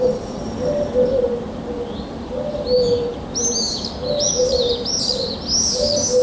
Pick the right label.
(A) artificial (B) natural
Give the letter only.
B